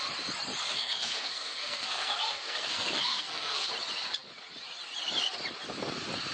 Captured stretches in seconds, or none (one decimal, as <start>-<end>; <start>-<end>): 0.0-0.6; 3.7-6.3